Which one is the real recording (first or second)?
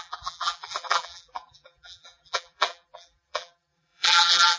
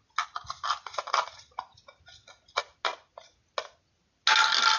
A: second